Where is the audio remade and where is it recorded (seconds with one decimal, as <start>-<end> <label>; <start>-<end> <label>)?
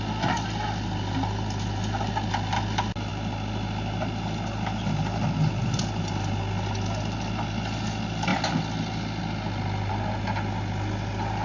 0.0-11.4 recorded